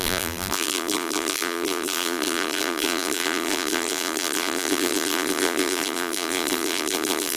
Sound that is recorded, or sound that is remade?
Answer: remade